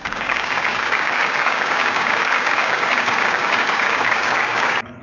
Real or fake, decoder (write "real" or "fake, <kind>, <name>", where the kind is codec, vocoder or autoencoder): fake, codec, DAC